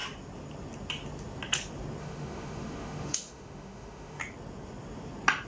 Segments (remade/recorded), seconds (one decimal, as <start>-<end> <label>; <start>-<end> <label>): 0.0-2.0 recorded; 2.0-4.2 remade; 4.2-5.5 recorded